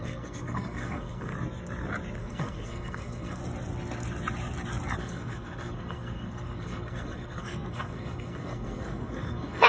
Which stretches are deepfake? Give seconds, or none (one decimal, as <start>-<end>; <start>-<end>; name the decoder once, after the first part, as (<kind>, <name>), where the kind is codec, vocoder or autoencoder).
0.0-1.3 (codec, SNAC); 2.2-3.4; 5.0-9.7